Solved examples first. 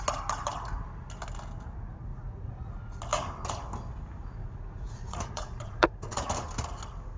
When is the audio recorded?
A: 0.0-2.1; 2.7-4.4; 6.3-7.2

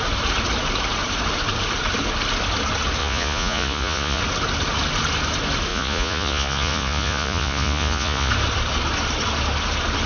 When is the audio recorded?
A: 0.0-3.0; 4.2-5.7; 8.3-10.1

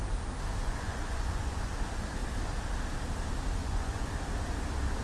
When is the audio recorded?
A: 0.0-0.6; 1.7-3.6; 4.1-5.0

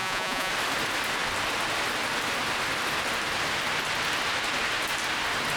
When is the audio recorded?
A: 0.5-5.6